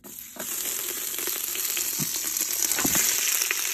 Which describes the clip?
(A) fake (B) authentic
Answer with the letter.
B